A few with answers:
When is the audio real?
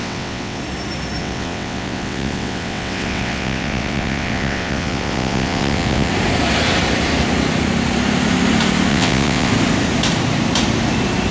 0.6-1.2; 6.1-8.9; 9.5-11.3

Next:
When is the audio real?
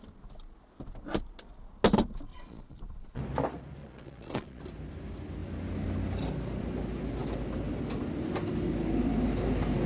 0.0-2.3; 3.2-3.8; 4.6-9.9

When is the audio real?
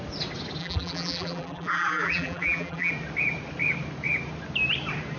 0.0-0.6; 2.9-5.2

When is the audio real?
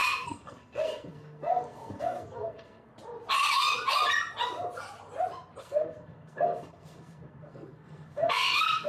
2.9-5.6